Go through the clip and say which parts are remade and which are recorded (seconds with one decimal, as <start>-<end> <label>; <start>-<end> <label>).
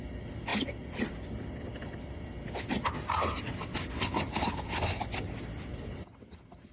0.0-6.7 recorded